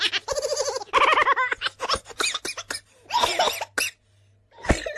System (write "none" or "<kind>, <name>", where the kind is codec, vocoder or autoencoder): none